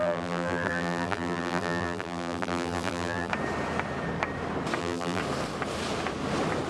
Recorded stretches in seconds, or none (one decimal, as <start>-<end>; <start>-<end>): 3.3-4.8; 5.2-6.7